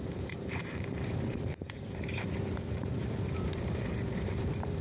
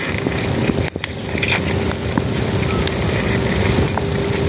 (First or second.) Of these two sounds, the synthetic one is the first